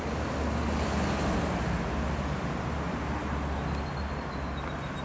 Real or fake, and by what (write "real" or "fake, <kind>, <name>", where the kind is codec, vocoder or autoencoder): real